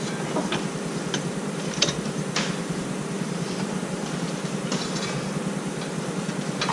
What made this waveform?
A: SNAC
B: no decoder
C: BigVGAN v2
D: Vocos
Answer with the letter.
C